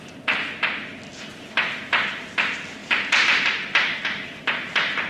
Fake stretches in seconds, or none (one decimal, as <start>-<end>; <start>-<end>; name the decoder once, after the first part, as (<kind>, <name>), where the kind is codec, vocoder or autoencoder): 1.1-2.2 (vocoder, BigVGAN v2); 2.8-5.1